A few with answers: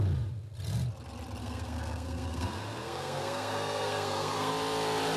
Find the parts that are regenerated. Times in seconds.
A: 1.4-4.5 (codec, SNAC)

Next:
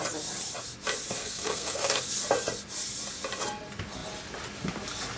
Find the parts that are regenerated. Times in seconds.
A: 1.2-2.0 (codec, SNAC)

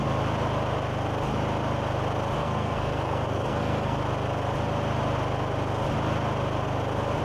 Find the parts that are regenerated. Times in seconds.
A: 2.4-4.0 (codec, SNAC)

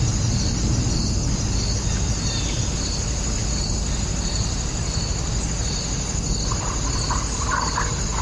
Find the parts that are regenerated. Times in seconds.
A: none

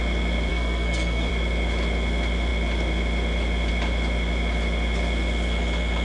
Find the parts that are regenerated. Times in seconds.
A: 0.5-1.3 (codec, SNAC)